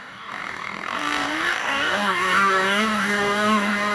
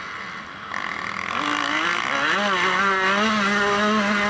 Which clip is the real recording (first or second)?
second